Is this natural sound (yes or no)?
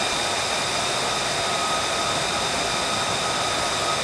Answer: yes